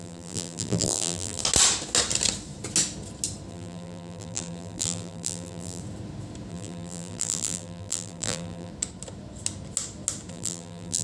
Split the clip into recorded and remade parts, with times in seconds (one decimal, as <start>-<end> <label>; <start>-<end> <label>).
0.0-1.4 remade; 1.4-3.5 recorded; 3.5-5.8 remade; 5.8-6.5 recorded; 6.5-8.7 remade; 8.7-10.3 recorded; 10.3-11.0 remade